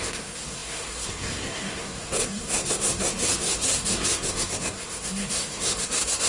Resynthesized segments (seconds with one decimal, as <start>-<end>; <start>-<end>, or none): 0.0-6.3